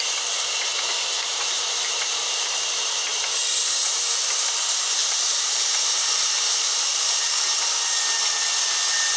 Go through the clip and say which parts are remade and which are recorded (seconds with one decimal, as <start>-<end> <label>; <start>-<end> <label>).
0.0-1.3 recorded; 1.3-3.1 remade; 3.1-5.0 recorded; 5.0-7.3 remade; 7.3-9.2 recorded